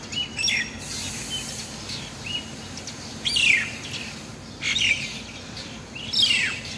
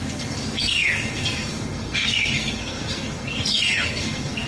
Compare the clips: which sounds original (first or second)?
first